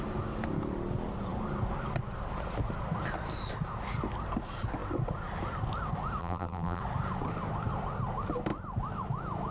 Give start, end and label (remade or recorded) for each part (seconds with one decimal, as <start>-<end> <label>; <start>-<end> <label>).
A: 0.0-6.2 recorded; 6.2-6.8 remade; 6.8-9.5 recorded